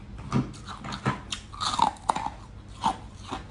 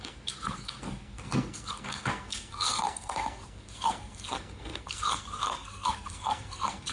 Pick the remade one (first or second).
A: second